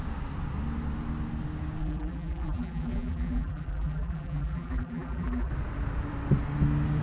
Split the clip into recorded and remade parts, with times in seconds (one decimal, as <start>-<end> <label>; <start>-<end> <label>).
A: 0.0-1.8 recorded; 1.8-5.5 remade; 5.5-7.0 recorded